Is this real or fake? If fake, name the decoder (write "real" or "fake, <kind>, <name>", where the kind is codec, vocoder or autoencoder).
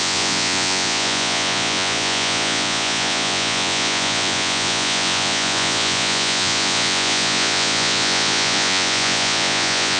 fake, vocoder, Vocos